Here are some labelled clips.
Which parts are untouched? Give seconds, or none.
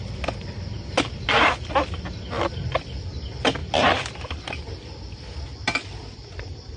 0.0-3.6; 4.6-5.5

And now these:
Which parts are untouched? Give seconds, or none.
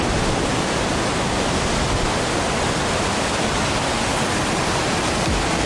0.0-5.7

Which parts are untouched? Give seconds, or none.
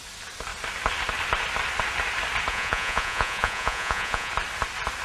0.0-2.5; 4.3-5.0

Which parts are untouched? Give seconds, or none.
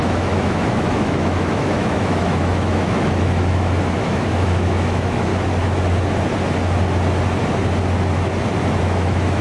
5.3-8.8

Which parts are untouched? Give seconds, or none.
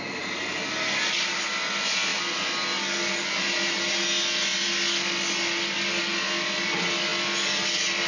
0.0-8.1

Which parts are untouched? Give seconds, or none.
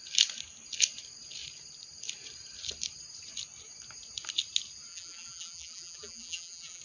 0.0-4.9